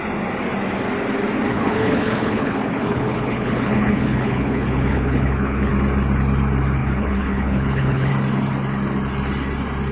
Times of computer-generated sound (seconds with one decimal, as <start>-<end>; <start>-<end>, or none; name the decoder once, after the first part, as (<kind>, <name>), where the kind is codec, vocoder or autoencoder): 1.5-5.7 (codec, HILCodec); 6.8-8.1